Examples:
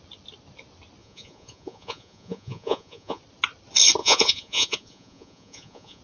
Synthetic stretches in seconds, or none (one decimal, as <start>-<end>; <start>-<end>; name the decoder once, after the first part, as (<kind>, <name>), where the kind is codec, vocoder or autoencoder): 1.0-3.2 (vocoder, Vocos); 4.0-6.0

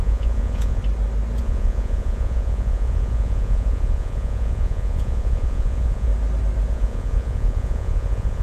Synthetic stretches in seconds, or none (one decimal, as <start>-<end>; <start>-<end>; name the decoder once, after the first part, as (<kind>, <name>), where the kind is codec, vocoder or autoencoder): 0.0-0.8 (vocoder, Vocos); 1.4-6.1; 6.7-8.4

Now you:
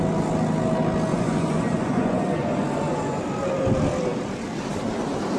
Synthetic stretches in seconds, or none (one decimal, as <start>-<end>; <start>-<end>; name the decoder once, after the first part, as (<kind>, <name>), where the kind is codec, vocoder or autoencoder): 1.1-3.2 (vocoder, Vocos)

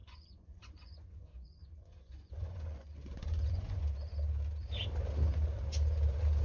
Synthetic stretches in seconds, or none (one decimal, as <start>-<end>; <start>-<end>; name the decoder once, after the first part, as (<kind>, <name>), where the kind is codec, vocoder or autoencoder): 0.0-3.8 (vocoder, Vocos)

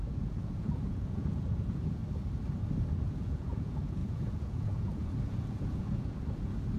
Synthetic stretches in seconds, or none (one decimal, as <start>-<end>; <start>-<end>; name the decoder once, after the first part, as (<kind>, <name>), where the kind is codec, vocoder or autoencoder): 0.0-2.0 (vocoder, Vocos); 2.8-6.8